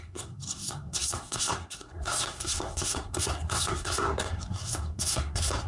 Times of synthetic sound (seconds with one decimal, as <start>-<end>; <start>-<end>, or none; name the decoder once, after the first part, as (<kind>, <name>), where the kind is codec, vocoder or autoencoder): 0.0-5.7 (codec, SNAC)